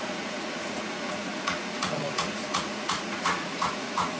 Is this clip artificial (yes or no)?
yes